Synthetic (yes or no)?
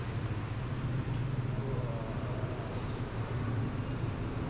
no